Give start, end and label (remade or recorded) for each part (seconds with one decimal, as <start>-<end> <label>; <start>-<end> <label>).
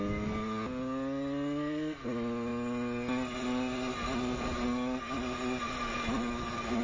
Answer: 0.0-6.8 recorded